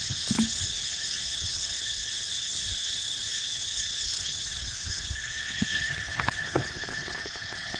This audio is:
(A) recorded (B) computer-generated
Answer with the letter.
B